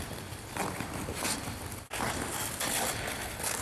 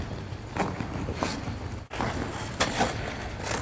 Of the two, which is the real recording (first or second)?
second